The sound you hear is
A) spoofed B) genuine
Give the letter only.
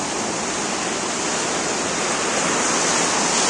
B